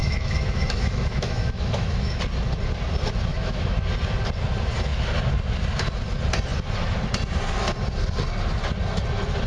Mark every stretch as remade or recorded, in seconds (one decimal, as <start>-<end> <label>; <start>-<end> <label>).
0.0-2.2 remade; 2.2-3.3 recorded; 3.3-3.8 remade; 3.8-9.5 recorded